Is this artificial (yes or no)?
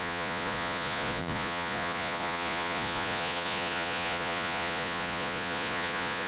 yes